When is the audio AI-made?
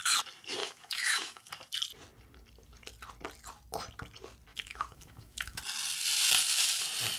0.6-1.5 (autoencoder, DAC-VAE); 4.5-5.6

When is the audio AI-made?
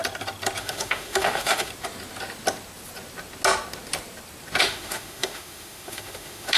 0.6-1.7 (autoencoder, DAC-VAE); 4.6-6.6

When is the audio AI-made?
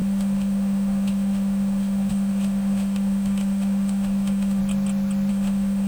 0.0-4.6 (autoencoder, DAC-VAE); 5.3-5.9